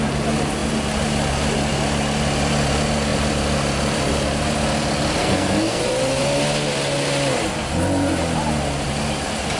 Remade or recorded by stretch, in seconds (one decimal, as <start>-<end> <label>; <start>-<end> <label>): 0.0-5.2 recorded; 5.2-5.8 remade; 5.8-9.6 recorded